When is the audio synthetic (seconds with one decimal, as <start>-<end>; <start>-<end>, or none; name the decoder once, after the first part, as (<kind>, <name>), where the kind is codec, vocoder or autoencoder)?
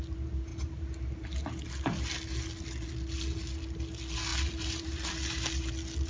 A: 4.3-5.1 (vocoder, BigVGAN v2)